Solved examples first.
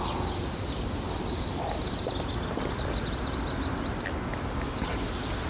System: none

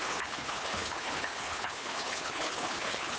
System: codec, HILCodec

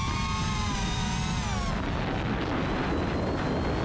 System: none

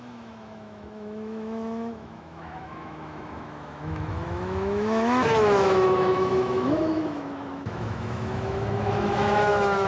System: autoencoder, DAC-VAE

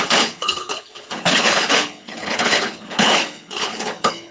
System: codec, HILCodec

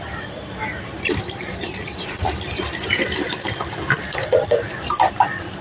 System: vocoder, BigVGAN v2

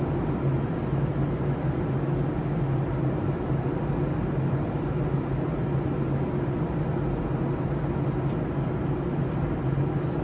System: none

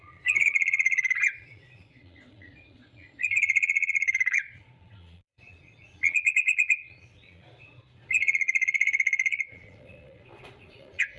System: vocoder, Vocos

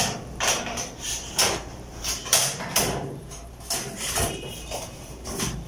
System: vocoder, BigVGAN v2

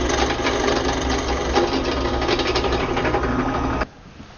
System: none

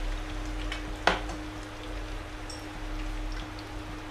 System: none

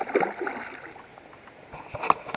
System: none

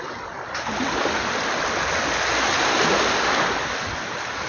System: none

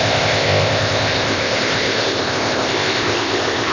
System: codec, ZipCodec